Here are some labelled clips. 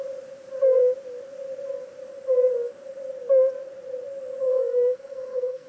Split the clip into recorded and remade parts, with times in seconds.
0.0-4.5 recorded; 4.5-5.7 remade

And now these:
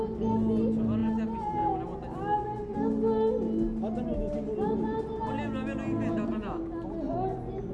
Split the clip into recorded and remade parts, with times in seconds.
0.0-7.7 recorded